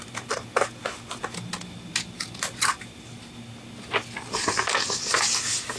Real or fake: real